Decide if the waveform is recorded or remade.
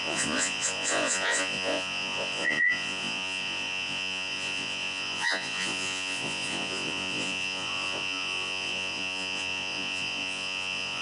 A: remade